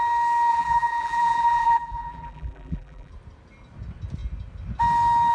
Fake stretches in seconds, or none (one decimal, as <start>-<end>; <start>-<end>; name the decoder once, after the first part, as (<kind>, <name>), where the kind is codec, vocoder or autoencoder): 0.5-3.1 (vocoder, BigVGAN v2)